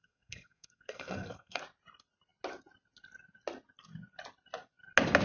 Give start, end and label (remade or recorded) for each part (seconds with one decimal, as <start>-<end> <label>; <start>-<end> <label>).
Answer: 0.0-1.6 remade; 1.6-5.2 recorded